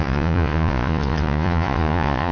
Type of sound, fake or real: fake